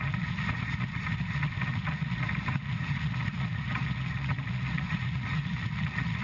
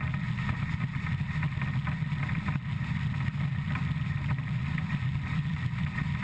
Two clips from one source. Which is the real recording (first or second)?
second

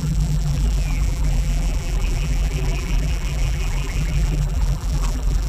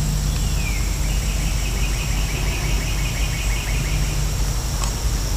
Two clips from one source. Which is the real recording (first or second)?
second